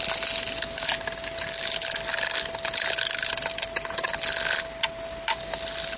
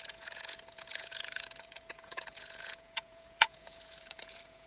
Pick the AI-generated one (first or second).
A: second